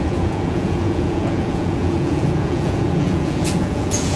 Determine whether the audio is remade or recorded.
remade